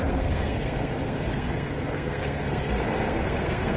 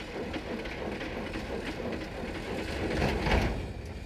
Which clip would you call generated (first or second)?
first